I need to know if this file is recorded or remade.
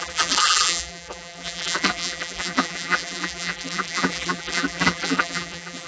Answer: remade